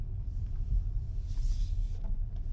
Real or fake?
fake